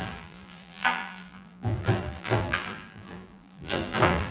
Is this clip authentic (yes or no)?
no